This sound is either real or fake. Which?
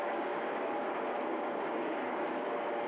fake